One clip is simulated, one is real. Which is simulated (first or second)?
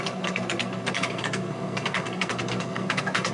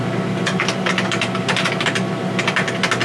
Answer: first